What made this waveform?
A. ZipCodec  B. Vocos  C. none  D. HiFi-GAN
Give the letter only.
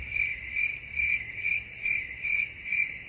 C